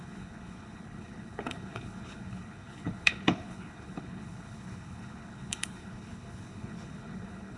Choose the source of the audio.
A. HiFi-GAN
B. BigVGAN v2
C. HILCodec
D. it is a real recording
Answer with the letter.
C